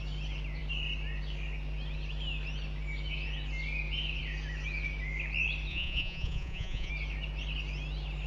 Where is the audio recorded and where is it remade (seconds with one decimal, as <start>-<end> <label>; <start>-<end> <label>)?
0.0-5.7 recorded; 5.7-6.9 remade; 6.9-8.3 recorded